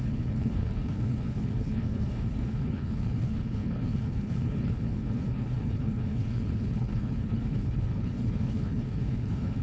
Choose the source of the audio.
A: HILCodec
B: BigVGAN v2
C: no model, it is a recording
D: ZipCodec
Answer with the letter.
A